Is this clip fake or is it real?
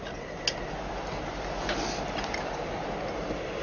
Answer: real